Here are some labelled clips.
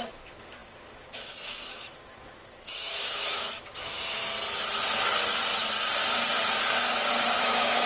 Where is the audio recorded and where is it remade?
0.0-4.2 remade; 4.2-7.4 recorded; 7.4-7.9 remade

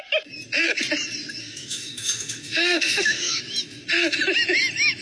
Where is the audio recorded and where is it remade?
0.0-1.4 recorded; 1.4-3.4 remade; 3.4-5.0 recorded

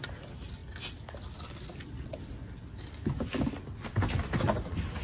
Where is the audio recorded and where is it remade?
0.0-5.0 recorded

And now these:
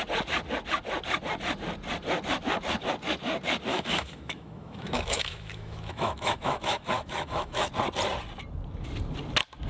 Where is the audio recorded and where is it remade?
0.0-3.7 recorded; 3.7-7.7 remade; 7.7-9.7 recorded

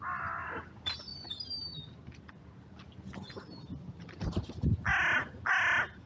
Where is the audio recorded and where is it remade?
0.0-6.1 recorded